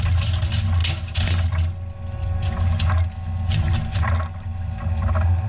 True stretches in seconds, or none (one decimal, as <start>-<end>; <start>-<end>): 0.0-5.5